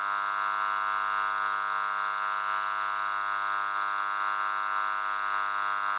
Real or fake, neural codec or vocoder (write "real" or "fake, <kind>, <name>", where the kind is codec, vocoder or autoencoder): real